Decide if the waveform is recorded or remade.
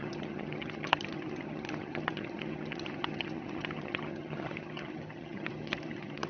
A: remade